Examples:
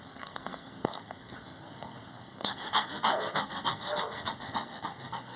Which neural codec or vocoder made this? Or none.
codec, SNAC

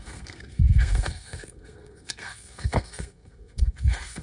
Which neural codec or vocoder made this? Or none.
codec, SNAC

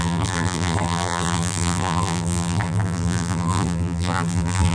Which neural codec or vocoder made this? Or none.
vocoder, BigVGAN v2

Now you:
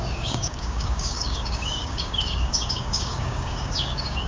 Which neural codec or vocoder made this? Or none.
codec, DAC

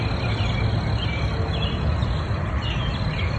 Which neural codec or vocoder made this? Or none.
none